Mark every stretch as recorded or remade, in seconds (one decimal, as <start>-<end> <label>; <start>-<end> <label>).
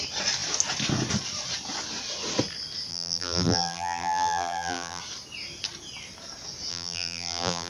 0.0-2.9 recorded; 2.9-5.0 remade; 5.0-6.7 recorded; 6.7-7.7 remade